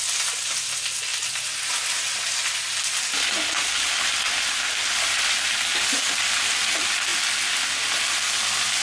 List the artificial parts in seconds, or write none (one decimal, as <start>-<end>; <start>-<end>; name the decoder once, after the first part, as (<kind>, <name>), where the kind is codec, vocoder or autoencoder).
none

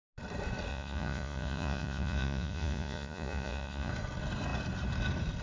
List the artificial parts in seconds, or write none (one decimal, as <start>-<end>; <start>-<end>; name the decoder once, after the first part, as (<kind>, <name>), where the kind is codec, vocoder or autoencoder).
0.7-3.9 (vocoder, Vocos)

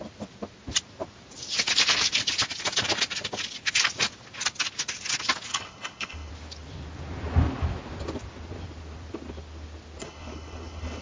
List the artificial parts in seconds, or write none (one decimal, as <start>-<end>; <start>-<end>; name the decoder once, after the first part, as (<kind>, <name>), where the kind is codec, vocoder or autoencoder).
5.5-6.3 (codec, HILCodec); 10.0-11.0